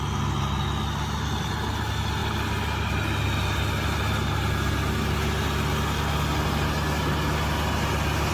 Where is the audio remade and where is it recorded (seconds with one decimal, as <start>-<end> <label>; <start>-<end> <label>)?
0.0-8.3 recorded